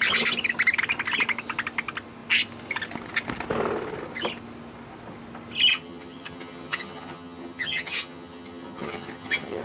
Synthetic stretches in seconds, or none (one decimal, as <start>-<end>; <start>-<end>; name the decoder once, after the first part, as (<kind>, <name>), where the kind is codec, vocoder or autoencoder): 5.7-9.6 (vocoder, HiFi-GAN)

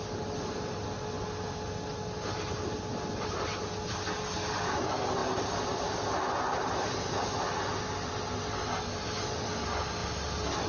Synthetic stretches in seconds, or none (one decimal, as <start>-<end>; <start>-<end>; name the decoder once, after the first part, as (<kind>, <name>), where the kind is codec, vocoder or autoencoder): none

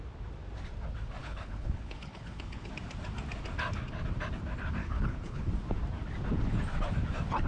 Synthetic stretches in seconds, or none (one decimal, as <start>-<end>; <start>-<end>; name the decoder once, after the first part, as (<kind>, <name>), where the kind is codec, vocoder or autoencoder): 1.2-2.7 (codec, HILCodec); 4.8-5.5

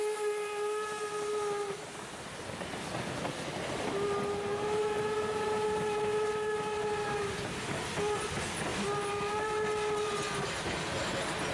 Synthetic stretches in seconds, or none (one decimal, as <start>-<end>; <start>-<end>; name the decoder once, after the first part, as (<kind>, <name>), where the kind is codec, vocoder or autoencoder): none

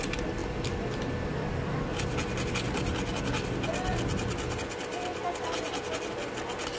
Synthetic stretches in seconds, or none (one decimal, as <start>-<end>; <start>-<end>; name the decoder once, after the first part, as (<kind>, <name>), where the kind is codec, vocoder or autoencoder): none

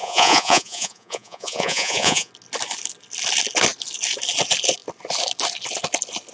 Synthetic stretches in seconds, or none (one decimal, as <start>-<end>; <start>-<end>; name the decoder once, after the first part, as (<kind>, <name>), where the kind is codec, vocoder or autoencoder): 0.0-2.3 (vocoder, Vocos)